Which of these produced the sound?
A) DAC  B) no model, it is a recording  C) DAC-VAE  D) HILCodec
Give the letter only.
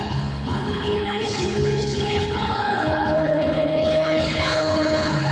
D